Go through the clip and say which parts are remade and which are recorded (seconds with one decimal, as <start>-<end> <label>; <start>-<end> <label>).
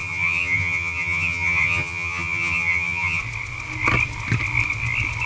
0.0-3.2 remade; 3.2-5.3 recorded